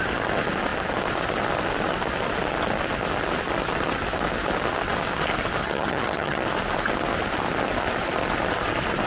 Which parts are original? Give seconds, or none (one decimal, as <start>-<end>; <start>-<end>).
0.0-5.6; 6.4-9.1